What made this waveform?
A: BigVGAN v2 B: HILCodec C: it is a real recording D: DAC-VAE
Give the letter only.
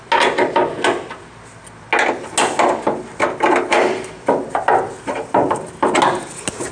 C